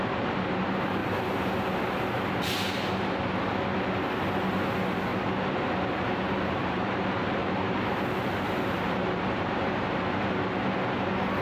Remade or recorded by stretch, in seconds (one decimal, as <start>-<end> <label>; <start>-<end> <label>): 0.0-5.1 recorded; 5.1-10.2 remade; 10.2-11.4 recorded